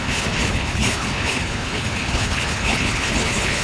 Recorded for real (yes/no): no